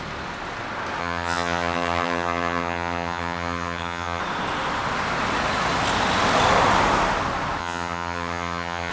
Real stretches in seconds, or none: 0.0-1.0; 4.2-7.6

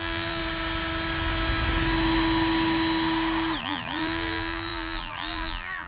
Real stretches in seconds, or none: 0.4-3.6

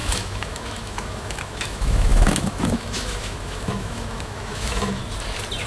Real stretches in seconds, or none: 5.0-5.7

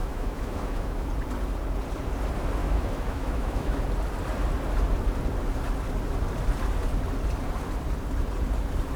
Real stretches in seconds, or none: 1.1-2.6; 3.8-9.0

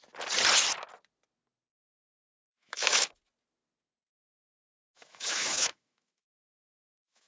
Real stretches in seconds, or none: 0.0-2.2; 3.1-4.3

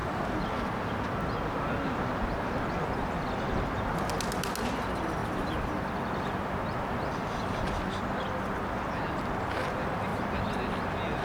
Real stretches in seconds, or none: 0.0-5.2; 7.9-10.1; 10.7-11.2

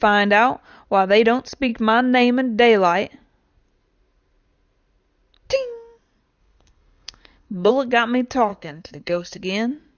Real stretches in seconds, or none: 0.0-6.4; 7.7-8.5; 9.4-10.0